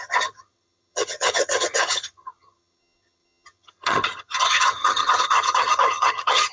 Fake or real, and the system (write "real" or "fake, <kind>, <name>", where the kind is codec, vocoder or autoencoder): fake, vocoder, HiFi-GAN